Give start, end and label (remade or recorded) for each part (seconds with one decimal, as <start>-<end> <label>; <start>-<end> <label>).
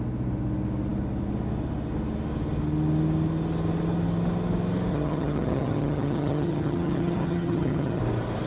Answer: 0.0-4.9 recorded; 4.9-8.0 remade; 8.0-8.5 recorded